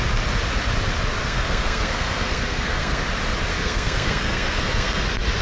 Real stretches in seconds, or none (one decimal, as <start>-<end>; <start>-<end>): 0.0-1.2; 3.0-3.5; 5.0-5.4